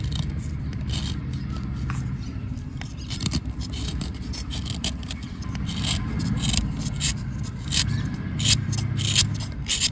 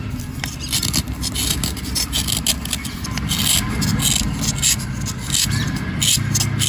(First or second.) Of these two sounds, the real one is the second